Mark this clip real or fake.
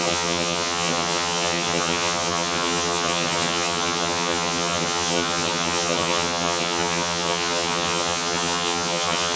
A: fake